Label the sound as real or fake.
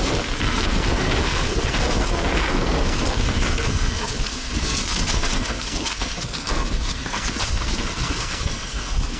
fake